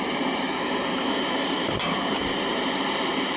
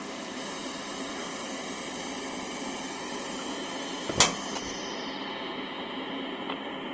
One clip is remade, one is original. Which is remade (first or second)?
first